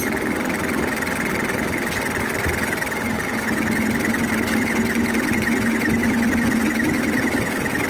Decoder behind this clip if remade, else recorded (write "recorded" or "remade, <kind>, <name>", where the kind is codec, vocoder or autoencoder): recorded